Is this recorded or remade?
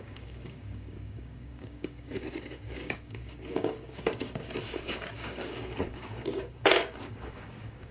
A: remade